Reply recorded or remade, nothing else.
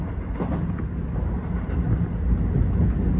recorded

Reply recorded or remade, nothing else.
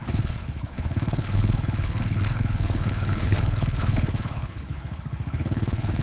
remade